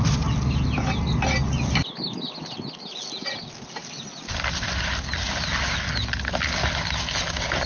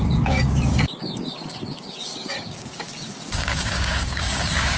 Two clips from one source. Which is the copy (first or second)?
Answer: second